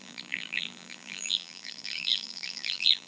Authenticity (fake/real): fake